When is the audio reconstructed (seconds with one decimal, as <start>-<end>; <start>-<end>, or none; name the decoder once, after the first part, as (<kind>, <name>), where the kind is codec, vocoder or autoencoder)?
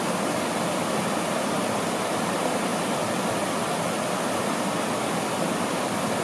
none